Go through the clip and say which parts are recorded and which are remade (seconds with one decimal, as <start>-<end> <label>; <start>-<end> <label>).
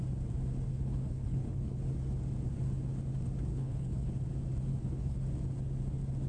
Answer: 0.0-0.7 recorded; 0.7-1.8 remade; 1.8-3.5 recorded; 3.5-4.1 remade; 4.1-4.7 recorded; 4.7-5.2 remade; 5.2-6.3 recorded